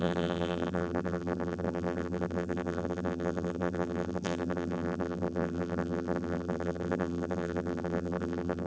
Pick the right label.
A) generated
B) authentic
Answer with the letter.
A